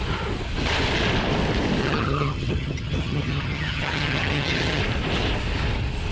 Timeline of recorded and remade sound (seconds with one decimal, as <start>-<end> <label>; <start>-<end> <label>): 0.0-1.8 recorded; 1.8-4.8 remade; 4.8-6.1 recorded